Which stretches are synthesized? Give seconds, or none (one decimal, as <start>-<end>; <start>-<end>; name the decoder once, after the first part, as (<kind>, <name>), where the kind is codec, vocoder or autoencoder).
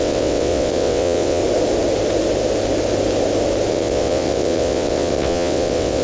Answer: 0.0-1.4 (vocoder, WaveNeXt); 3.7-6.0